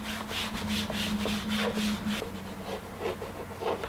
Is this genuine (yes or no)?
yes